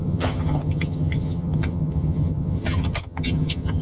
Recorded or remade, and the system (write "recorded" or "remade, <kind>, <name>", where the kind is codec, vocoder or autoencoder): remade, vocoder, HiFi-GAN